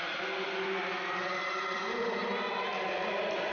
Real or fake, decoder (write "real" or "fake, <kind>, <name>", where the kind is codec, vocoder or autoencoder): real